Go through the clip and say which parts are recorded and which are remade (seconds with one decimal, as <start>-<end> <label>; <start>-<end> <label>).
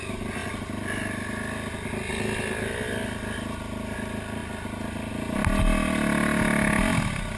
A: 0.0-7.4 recorded